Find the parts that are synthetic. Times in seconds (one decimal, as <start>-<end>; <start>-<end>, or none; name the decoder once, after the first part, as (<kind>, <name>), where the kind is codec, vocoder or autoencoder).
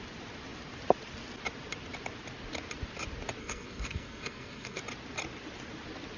3.4-4.8 (codec, SNAC)